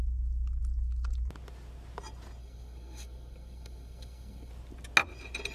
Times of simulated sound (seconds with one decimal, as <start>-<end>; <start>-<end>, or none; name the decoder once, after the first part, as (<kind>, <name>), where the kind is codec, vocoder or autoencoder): 2.4-4.5 (codec, SNAC)